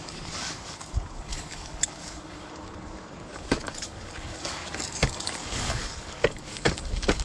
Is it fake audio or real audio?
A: fake